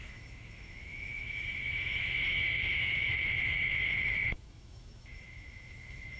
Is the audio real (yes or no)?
no